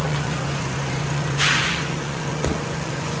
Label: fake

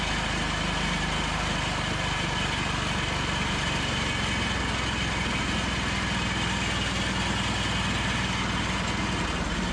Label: real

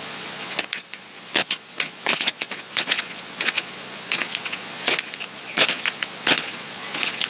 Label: fake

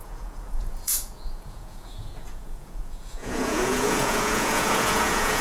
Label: fake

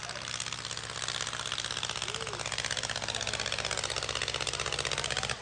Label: real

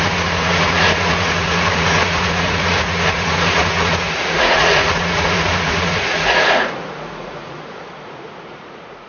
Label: fake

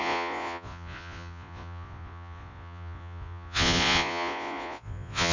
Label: fake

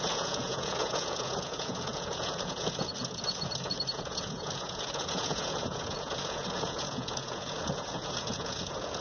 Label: fake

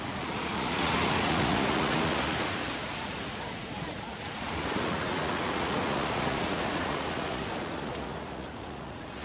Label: fake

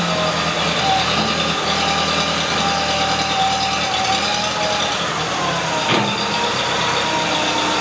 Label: real